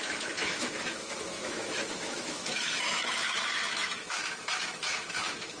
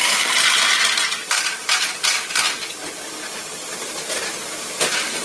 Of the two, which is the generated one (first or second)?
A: first